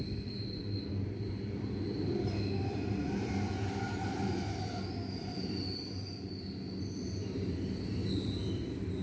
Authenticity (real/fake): real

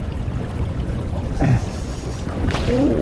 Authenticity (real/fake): fake